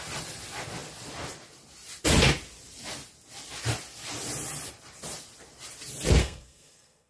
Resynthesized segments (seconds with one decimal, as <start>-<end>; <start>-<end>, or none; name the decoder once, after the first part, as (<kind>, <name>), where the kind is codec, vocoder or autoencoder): 6.2-7.1 (codec, SNAC)